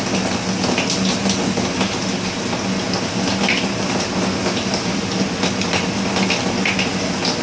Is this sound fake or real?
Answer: real